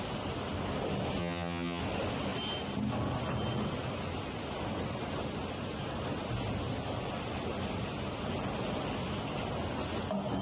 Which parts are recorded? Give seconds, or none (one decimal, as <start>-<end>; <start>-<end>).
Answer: 0.0-1.2; 1.8-10.4